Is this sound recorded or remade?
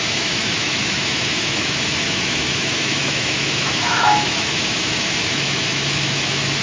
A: remade